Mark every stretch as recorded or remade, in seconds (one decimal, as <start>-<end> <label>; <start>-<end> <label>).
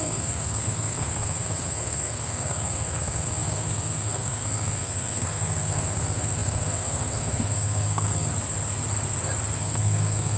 0.0-8.3 remade; 8.3-9.6 recorded; 9.6-10.4 remade